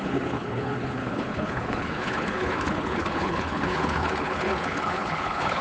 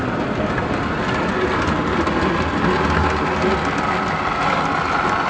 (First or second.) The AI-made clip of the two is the first